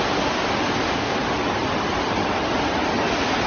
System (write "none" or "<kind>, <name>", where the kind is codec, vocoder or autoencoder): none